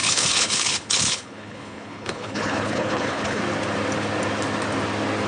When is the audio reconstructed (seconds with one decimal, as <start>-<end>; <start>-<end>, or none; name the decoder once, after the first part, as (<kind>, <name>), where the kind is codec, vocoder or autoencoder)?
0.0-3.4 (codec, HILCodec)